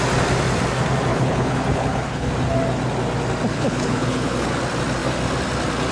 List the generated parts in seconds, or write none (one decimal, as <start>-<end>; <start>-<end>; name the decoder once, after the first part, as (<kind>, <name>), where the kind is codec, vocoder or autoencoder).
1.1-2.3 (codec, HILCodec); 3.5-4.6